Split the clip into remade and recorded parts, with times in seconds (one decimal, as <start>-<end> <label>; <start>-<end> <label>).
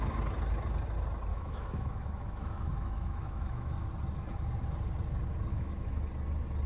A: 0.0-1.3 recorded; 1.3-3.9 remade; 3.9-5.5 recorded; 5.5-6.0 remade; 6.0-6.7 recorded